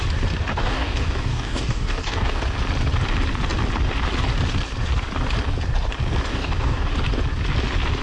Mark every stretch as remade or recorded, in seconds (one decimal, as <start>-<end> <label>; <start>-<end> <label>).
0.0-0.6 recorded; 0.6-2.4 remade; 2.4-6.3 recorded; 6.3-6.9 remade; 6.9-8.0 recorded